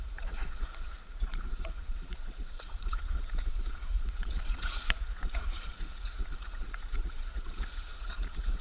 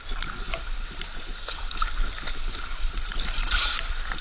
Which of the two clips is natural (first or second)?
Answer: second